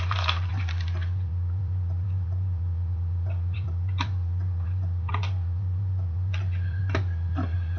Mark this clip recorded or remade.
remade